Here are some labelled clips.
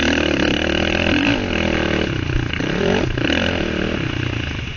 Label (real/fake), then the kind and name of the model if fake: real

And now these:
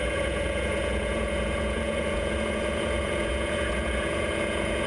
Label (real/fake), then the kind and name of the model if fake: fake, vocoder, Vocos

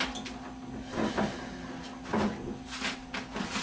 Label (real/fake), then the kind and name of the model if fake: real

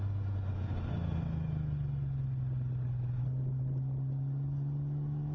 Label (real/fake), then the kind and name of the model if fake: real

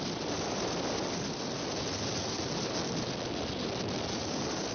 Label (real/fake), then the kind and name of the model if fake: real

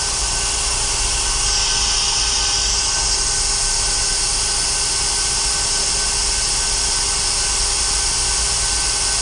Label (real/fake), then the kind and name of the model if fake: real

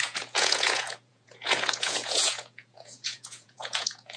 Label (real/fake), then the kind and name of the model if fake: fake, vocoder, Vocos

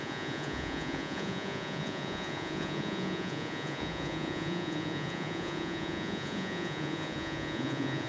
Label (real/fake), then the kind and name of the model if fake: fake, vocoder, Vocos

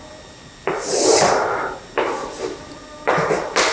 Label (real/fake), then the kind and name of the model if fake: real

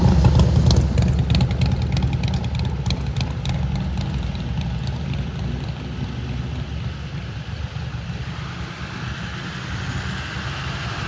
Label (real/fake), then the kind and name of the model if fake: real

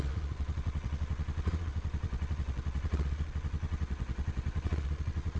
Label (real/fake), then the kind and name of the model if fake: fake, vocoder, Vocos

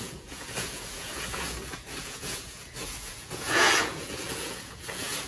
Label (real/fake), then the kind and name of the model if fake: fake, vocoder, Vocos